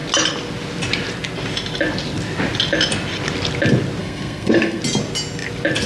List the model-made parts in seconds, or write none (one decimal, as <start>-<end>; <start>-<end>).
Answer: 4.0-4.8